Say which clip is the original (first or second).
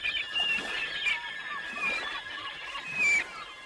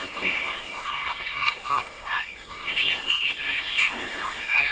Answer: first